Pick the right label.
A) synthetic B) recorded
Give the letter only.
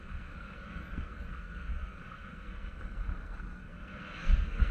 A